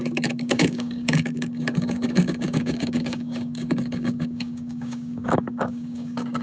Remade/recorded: remade